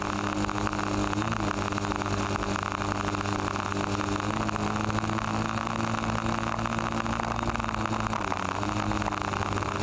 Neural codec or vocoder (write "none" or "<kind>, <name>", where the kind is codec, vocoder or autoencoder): none